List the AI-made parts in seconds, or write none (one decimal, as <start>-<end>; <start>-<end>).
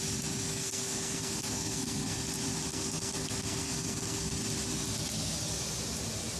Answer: 0.5-2.2; 2.7-4.2